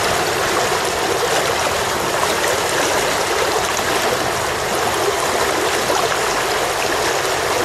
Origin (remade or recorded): recorded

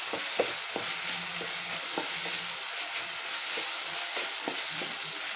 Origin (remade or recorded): recorded